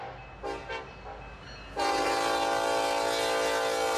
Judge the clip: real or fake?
real